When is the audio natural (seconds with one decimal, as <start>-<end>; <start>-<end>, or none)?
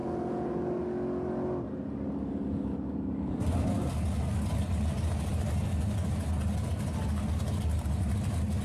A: 0.0-8.6